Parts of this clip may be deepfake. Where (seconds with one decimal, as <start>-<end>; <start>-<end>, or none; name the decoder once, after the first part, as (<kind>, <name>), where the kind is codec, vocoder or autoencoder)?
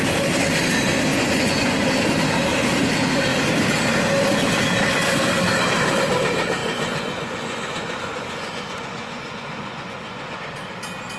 1.1-1.9 (vocoder, Vocos); 6.6-10.5